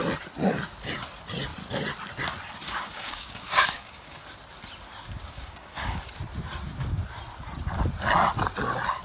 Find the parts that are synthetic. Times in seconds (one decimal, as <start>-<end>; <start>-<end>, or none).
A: 2.6-4.3; 5.2-6.1